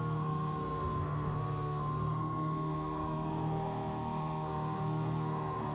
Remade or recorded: remade